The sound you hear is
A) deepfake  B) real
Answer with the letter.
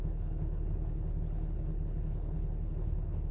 A